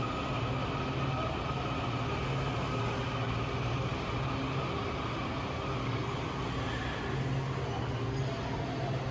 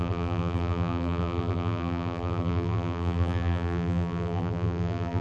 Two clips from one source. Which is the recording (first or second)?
first